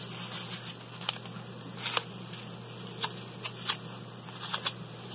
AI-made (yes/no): no